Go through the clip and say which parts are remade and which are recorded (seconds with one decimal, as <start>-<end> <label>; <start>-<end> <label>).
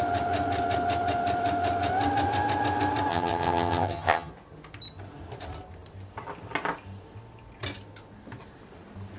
0.0-3.1 recorded; 3.1-4.3 remade; 4.3-9.2 recorded